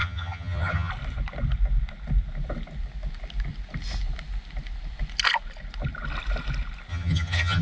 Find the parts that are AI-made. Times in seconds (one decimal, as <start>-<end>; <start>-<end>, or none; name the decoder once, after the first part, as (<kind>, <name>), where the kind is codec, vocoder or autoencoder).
0.0-0.9 (vocoder, HiFi-GAN); 6.9-7.6